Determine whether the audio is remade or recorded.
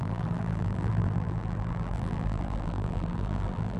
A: remade